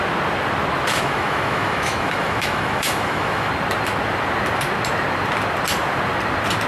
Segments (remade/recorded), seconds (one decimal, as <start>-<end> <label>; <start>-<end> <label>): 0.0-0.9 recorded; 0.9-3.5 remade; 3.5-6.7 recorded